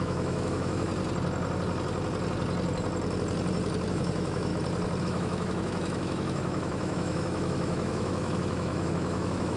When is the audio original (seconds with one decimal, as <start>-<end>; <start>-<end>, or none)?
0.9-3.9; 4.5-5.0